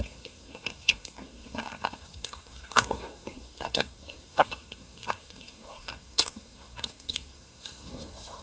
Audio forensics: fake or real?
fake